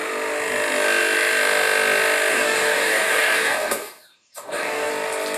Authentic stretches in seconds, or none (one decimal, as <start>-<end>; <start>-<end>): 0.0-2.3; 4.9-5.4